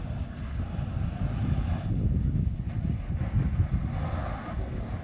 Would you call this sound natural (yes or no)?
yes